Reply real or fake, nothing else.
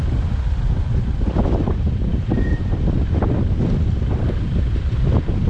real